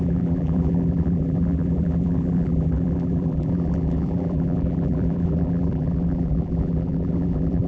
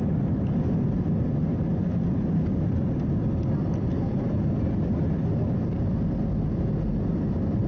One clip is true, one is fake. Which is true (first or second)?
second